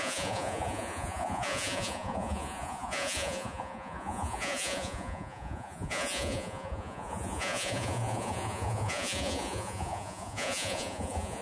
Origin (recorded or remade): remade